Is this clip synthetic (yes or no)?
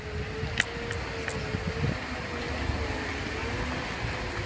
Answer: no